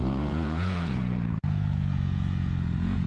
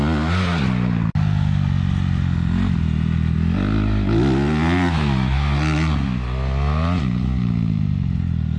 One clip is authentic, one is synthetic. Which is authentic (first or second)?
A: second